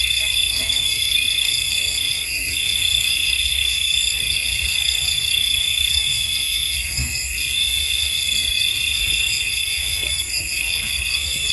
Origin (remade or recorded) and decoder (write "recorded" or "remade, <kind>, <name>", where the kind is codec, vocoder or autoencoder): remade, codec, SNAC